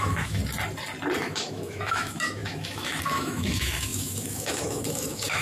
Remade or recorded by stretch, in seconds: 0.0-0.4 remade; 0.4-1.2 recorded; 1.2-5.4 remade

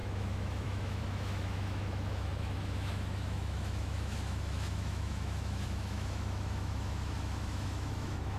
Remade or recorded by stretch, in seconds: 0.0-8.4 remade